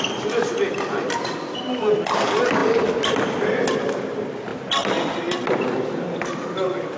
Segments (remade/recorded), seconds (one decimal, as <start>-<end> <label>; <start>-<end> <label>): 0.0-7.0 recorded